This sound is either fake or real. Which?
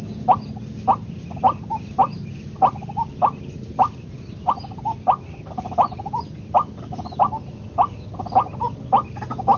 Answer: real